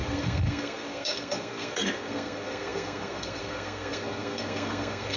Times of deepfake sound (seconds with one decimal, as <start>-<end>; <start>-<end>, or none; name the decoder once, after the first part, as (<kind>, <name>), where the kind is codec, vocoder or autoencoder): 0.0-5.2 (codec, SNAC)